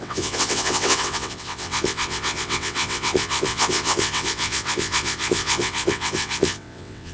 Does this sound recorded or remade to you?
remade